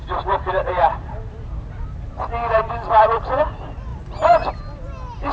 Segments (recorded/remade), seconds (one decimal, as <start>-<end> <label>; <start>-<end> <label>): 0.0-2.7 remade; 2.7-3.9 recorded; 3.9-4.5 remade; 4.5-5.3 recorded